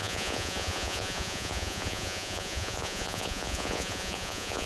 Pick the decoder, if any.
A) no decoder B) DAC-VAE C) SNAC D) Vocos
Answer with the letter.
D